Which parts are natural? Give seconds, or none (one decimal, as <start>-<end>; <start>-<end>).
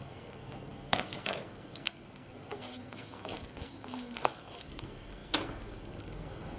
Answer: none